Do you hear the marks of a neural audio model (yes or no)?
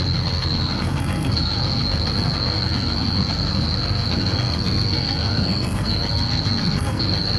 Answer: yes